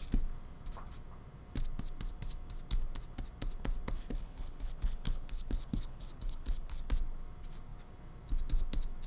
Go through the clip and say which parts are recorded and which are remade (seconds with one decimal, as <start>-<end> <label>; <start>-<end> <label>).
0.0-4.1 recorded; 4.1-6.9 remade; 6.9-9.1 recorded